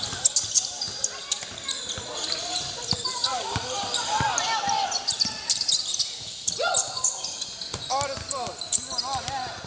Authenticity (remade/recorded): recorded